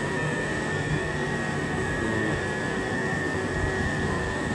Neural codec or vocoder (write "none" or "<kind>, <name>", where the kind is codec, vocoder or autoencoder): codec, SNAC